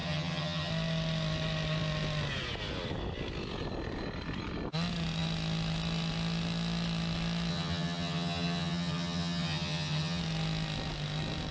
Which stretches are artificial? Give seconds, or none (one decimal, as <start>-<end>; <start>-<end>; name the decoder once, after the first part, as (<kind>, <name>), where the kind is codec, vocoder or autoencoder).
0.0-0.7 (vocoder, HiFi-GAN); 7.5-10.2